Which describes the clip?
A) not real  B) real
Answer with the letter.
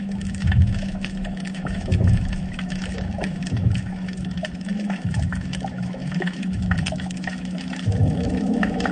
A